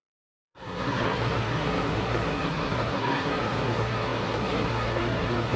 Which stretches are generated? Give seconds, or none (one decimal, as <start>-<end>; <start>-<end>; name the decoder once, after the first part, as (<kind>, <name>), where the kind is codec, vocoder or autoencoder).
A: 0.0-5.6 (codec, SNAC)